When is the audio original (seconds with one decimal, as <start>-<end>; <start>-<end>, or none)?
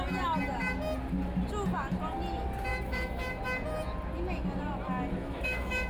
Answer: 0.0-2.7; 3.4-5.2